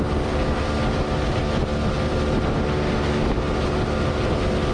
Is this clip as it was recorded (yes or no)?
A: yes